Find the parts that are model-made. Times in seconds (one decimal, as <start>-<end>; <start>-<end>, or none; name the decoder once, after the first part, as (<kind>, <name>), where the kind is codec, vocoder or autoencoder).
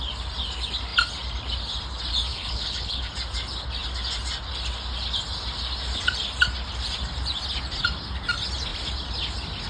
2.3-3.1 (codec, HILCodec)